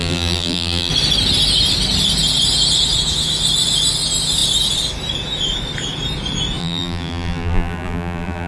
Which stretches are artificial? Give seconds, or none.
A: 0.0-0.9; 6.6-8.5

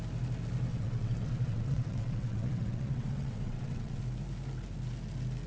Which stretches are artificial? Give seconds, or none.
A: 0.7-4.0

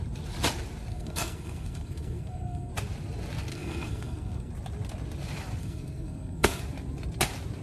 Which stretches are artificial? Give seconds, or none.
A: 0.9-2.7; 3.5-4.5; 5.6-6.6

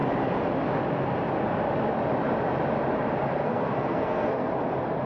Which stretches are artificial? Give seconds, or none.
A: 3.4-4.5

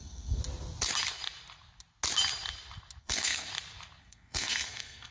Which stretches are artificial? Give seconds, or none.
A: 0.0-0.4; 3.0-3.5; 4.0-5.1